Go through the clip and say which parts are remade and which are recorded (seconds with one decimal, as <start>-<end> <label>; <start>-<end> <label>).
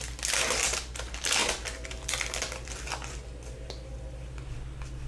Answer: 0.0-5.1 recorded